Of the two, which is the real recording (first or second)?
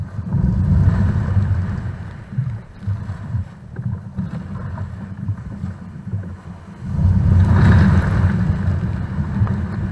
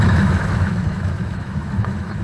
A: first